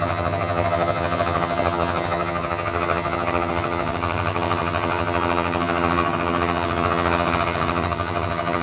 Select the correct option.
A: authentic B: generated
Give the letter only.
B